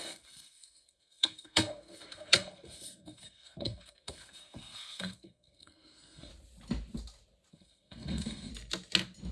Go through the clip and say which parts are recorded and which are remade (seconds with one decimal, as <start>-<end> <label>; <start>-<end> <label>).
0.0-6.3 remade; 6.3-7.5 recorded; 7.5-8.5 remade; 8.5-9.3 recorded